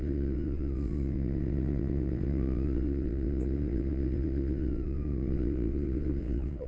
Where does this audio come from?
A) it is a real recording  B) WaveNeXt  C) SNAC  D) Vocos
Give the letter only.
B